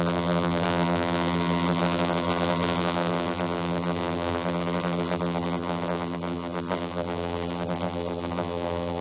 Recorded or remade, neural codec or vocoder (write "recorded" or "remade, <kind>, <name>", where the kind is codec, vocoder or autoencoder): remade, vocoder, BigVGAN v2